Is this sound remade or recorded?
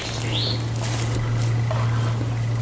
recorded